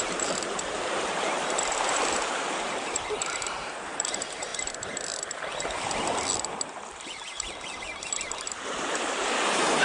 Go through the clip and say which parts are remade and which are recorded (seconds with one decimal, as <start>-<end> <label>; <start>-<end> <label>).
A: 0.0-4.5 remade; 4.5-8.1 recorded; 8.1-9.8 remade

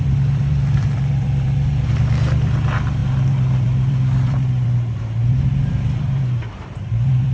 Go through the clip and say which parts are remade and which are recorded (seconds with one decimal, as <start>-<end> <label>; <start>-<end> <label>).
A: 0.0-7.3 remade

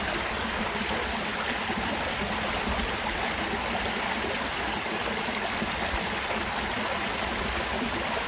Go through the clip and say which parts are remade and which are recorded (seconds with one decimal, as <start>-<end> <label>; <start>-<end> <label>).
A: 0.0-1.3 remade; 1.3-4.5 recorded; 4.5-8.3 remade

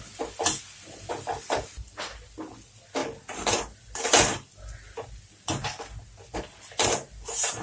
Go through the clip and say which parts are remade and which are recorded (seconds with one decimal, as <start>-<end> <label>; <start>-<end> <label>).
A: 0.0-7.6 recorded

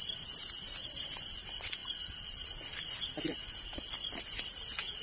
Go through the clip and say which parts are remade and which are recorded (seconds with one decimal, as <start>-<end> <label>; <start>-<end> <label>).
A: 0.0-1.8 remade; 1.8-4.2 recorded; 4.2-5.0 remade

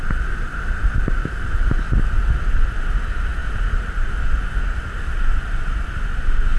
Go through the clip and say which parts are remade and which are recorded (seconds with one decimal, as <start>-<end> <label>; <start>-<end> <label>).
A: 0.0-6.6 recorded